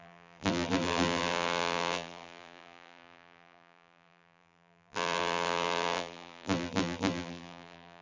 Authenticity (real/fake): fake